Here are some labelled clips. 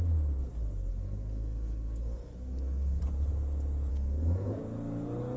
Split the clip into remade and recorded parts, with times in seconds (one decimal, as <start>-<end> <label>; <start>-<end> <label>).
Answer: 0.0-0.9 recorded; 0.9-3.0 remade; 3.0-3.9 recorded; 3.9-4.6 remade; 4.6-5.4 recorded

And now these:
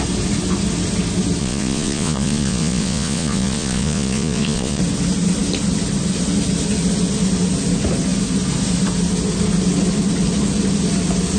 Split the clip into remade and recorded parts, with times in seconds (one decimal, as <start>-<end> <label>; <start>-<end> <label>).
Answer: 0.0-1.4 recorded; 1.4-4.8 remade; 4.8-11.4 recorded

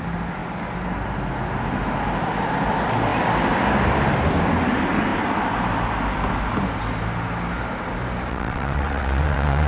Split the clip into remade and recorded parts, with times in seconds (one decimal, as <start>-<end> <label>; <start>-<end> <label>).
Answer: 0.0-8.3 recorded; 8.3-9.7 remade

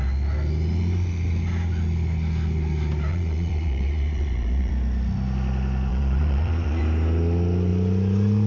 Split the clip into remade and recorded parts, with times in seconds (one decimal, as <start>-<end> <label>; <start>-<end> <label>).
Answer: 0.0-3.1 recorded; 3.1-4.7 remade; 4.7-5.9 recorded; 5.9-6.8 remade; 6.8-8.5 recorded

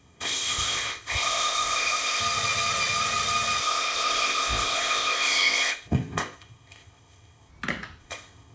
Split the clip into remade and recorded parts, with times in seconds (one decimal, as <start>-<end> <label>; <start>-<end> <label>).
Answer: 0.0-2.2 remade; 2.2-3.6 recorded; 3.6-7.5 remade; 7.5-8.0 recorded; 8.0-8.5 remade

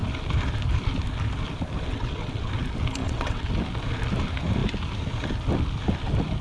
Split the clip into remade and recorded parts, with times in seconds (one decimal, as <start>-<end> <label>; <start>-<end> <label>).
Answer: 0.0-1.9 recorded; 1.9-2.5 remade; 2.5-3.0 recorded; 3.0-3.5 remade; 3.5-6.4 recorded